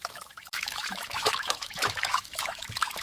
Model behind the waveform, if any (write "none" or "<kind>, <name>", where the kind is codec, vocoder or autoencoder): autoencoder, DAC-VAE